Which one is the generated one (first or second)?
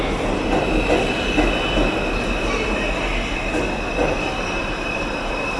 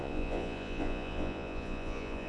second